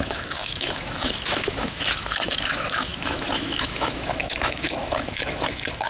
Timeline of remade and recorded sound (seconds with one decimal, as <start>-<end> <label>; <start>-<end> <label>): 0.0-5.9 remade